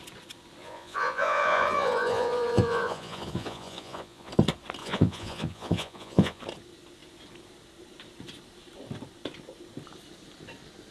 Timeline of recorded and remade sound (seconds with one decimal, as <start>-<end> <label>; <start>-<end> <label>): 0.0-0.6 recorded; 0.6-4.3 remade; 4.3-4.8 recorded; 4.8-6.4 remade; 6.4-10.9 recorded